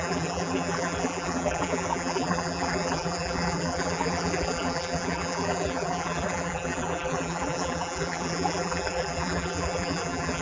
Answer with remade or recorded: remade